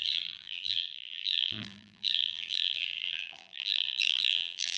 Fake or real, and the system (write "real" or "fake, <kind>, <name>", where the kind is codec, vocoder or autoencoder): fake, vocoder, BigVGAN v2